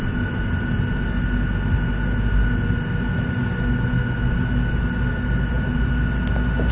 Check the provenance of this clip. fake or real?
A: real